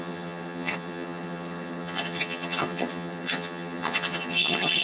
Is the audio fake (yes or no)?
yes